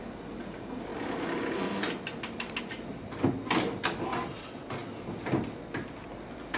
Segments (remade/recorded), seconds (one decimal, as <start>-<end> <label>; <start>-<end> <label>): 0.0-6.6 recorded